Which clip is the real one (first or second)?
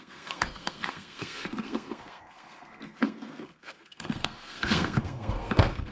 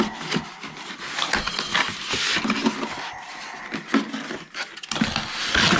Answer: second